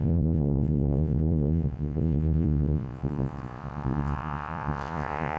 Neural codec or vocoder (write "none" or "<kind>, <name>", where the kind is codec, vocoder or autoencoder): vocoder, Vocos